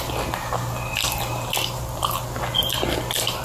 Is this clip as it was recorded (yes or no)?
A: yes